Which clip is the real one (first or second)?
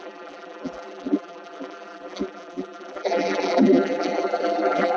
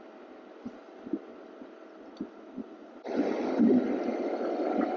second